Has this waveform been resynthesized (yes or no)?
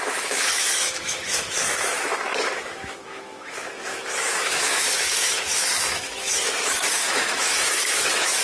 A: yes